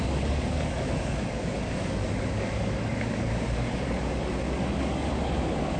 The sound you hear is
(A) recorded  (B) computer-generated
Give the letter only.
B